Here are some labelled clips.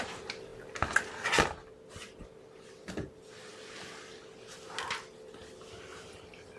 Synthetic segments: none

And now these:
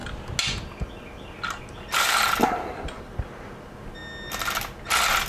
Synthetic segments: none

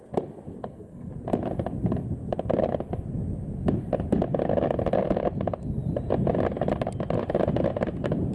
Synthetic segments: 0.6-1.1 (codec, SNAC)

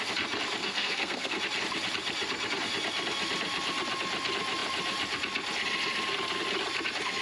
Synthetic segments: 0.6-1.4 (codec, SNAC)

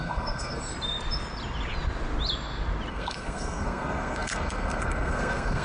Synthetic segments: 0.0-0.7 (codec, SNAC); 2.9-5.6